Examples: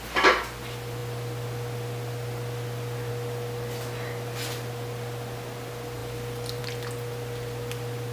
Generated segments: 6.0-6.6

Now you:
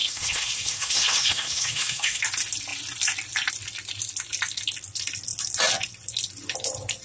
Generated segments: 0.0-2.2

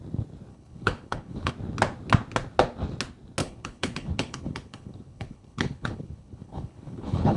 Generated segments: 0.5-1.5; 3.4-7.4

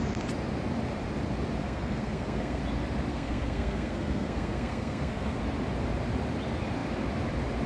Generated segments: 1.6-2.6; 3.1-5.4